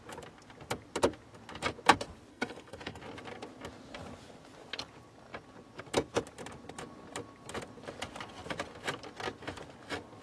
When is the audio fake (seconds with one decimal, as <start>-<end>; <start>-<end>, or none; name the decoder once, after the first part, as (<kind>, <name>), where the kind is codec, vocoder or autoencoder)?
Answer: 2.3-3.0 (codec, SNAC)